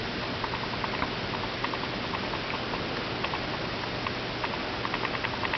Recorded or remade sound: recorded